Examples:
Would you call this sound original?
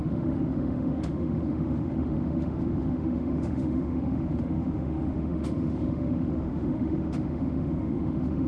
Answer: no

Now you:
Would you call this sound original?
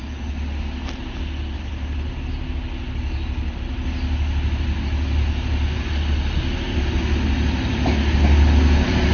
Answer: yes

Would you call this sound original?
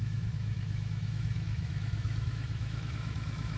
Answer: no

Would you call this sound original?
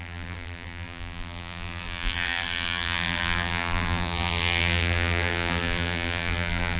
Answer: no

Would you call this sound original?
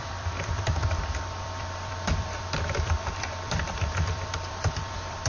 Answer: no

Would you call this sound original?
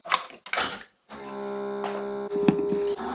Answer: yes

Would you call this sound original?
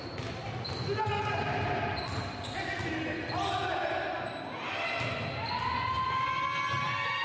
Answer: yes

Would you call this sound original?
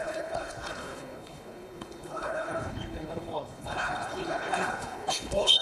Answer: no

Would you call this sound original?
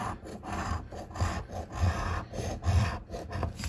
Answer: yes